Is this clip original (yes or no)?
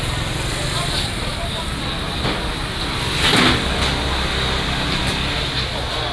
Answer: yes